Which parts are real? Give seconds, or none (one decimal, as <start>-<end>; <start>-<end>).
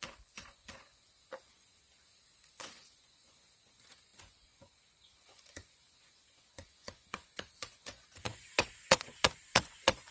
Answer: none